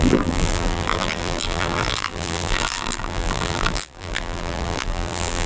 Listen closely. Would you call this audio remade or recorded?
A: remade